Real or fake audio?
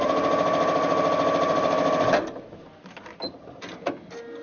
real